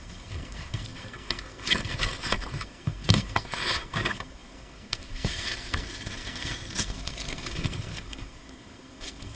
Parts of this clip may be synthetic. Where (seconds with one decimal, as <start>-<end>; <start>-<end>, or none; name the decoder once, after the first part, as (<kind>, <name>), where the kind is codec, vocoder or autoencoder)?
0.0-9.4 (codec, SNAC)